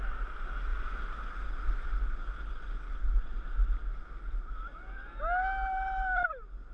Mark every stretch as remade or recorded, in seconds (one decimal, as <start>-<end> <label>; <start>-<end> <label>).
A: 0.0-6.7 recorded